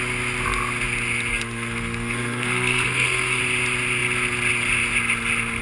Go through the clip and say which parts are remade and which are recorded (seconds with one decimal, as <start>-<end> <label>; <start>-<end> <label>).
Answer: 0.0-1.3 recorded; 1.3-3.4 remade; 3.4-5.6 recorded